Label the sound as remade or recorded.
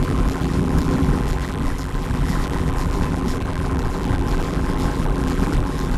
remade